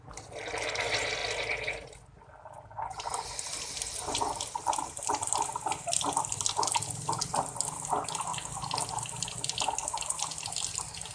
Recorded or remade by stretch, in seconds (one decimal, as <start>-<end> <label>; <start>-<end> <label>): 0.0-11.1 recorded